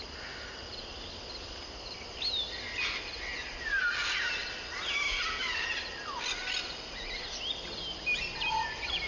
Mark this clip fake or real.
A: real